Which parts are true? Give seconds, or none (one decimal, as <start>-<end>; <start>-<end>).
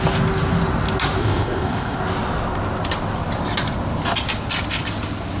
0.0-1.2; 2.0-5.4